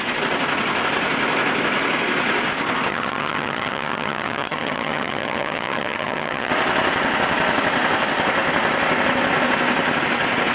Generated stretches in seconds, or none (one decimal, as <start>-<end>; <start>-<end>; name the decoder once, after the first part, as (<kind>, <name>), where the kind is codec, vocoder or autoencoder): 2.9-6.5 (vocoder, HiFi-GAN)

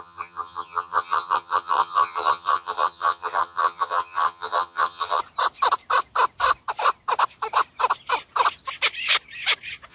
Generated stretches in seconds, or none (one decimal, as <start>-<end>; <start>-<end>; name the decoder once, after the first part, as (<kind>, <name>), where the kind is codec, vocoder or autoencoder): 0.0-5.2 (vocoder, HiFi-GAN)